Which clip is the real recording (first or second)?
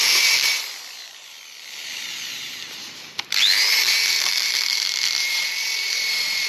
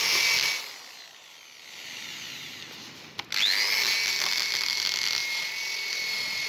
second